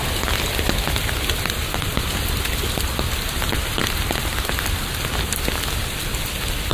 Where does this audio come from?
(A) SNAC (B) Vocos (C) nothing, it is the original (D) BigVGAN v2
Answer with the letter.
C